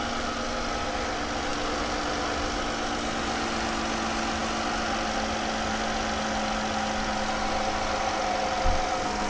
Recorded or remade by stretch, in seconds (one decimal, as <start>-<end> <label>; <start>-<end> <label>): 0.0-9.3 recorded